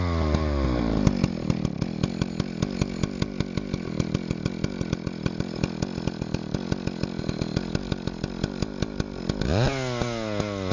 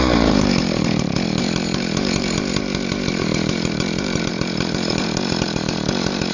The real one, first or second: first